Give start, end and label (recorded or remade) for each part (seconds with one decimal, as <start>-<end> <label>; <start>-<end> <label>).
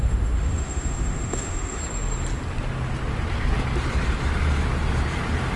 0.0-1.8 remade; 1.8-5.6 recorded